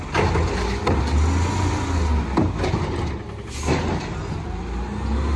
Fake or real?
real